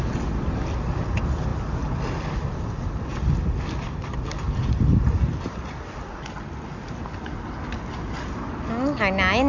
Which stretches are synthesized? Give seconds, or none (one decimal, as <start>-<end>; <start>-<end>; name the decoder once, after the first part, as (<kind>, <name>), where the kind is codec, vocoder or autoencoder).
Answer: none